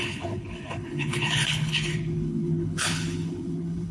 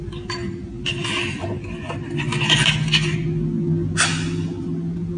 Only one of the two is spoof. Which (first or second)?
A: first